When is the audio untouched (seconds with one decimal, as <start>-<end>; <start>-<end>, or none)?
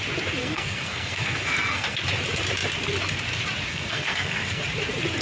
0.0-0.4; 2.0-3.7; 4.6-5.2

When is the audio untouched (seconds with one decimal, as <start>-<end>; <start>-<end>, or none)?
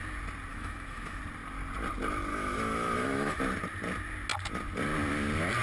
0.0-0.5; 1.2-2.3; 3.4-5.6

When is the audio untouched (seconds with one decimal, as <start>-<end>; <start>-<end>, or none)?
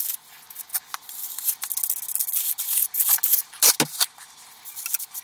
0.0-5.2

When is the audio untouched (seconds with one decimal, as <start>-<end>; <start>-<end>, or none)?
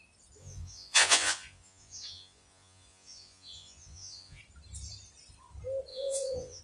0.0-0.4; 4.4-5.9